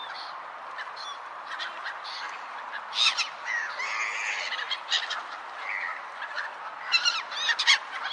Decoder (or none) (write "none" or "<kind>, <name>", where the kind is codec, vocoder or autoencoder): none